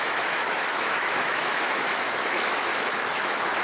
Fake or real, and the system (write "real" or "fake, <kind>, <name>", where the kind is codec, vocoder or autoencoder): fake, autoencoder, DAC-VAE